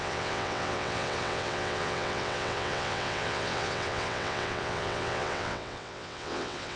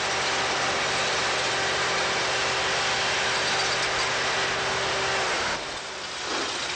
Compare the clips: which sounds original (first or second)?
second